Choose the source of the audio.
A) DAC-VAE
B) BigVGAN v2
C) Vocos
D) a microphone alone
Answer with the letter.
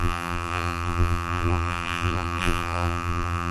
B